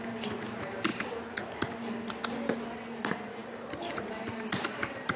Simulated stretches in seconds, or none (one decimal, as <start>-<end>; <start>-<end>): none